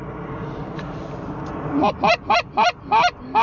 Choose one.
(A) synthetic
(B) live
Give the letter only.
B